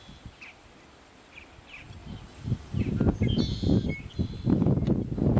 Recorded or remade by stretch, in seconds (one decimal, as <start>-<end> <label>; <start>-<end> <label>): 0.0-5.4 recorded